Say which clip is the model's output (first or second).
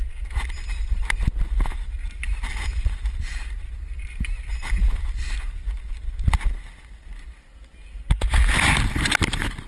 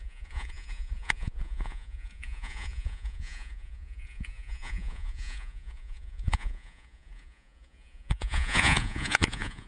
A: second